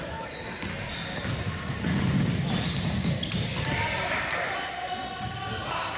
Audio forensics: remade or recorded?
recorded